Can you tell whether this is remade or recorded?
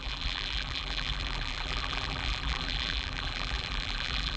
remade